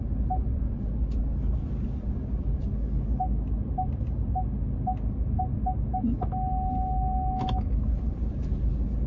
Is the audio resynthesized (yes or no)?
no